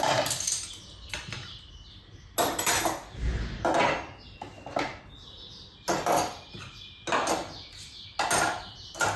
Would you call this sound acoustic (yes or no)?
yes